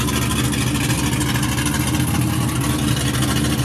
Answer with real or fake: real